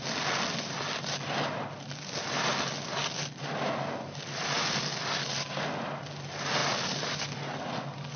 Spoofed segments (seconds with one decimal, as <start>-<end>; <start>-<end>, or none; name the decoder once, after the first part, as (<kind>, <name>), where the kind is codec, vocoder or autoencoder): 6.6-7.2 (vocoder, BigVGAN v2)

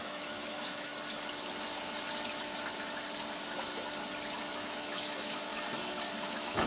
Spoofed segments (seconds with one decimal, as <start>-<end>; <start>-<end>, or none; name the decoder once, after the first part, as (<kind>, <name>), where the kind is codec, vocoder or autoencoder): 0.0-0.9 (autoencoder, DAC-VAE); 4.5-5.5; 6.1-6.7

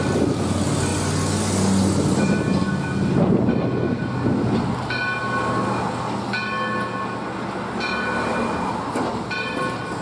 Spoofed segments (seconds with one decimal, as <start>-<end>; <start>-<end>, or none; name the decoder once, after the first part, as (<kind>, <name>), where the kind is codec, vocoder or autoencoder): none

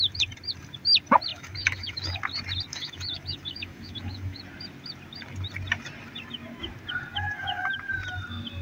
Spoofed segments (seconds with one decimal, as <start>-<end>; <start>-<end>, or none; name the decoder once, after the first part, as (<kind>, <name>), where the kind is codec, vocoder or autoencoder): 1.3-2.2 (autoencoder, DAC-VAE); 2.7-4.4; 7.1-7.7

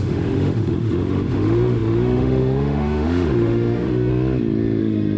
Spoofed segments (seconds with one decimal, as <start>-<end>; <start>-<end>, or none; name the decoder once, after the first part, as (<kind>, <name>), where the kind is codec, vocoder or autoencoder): 0.0-4.1 (autoencoder, DAC-VAE); 4.8-5.2

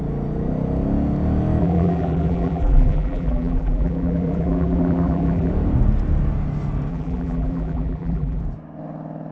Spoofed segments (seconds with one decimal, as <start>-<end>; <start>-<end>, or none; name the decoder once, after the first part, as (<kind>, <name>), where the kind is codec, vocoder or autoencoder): 1.6-5.5 (vocoder, BigVGAN v2); 6.9-8.4

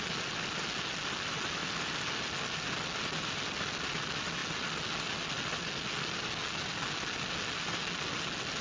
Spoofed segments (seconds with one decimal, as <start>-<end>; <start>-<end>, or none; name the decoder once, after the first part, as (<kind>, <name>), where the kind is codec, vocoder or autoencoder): none